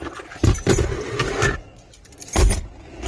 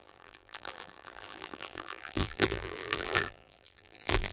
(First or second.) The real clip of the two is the first